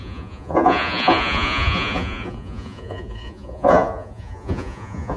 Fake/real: fake